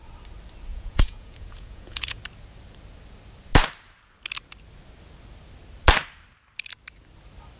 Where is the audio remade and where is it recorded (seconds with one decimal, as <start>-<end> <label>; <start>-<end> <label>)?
0.0-0.7 recorded; 0.7-2.2 remade; 2.2-7.6 recorded